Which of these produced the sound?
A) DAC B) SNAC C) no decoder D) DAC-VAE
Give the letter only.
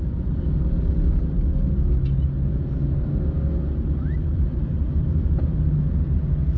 C